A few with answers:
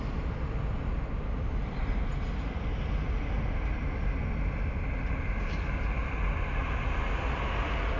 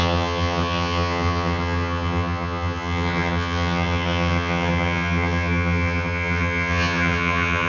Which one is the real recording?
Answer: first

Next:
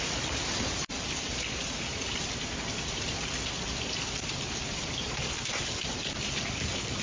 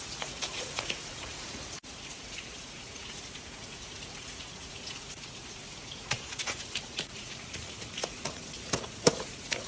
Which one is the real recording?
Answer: first